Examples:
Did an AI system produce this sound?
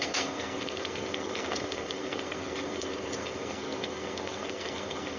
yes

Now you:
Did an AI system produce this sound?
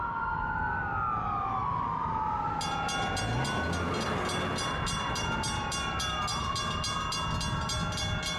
no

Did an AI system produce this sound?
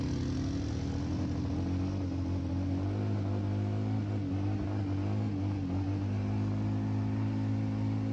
no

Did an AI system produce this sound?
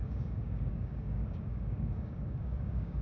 yes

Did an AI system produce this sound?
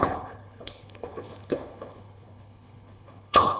yes